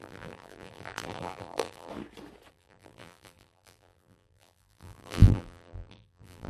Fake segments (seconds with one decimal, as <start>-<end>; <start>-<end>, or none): 0.0-1.9; 2.5-6.5